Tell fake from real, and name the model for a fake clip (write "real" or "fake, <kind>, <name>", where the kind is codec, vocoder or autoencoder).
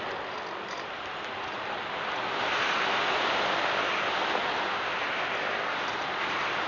real